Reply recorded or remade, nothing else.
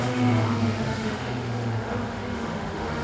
remade